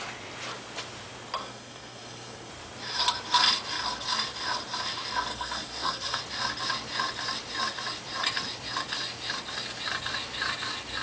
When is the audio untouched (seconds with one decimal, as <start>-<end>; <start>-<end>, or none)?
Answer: 0.0-1.4; 2.5-5.3; 6.2-11.0